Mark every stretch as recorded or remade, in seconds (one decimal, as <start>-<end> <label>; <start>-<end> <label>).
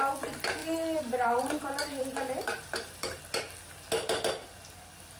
0.0-0.6 recorded; 0.6-3.2 remade; 3.2-5.2 recorded